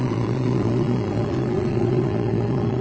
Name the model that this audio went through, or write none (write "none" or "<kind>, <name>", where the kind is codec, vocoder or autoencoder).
vocoder, Vocos